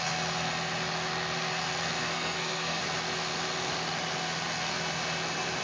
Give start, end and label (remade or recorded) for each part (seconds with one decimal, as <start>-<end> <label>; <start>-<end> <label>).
0.0-2.0 recorded; 2.0-2.8 remade; 2.8-5.6 recorded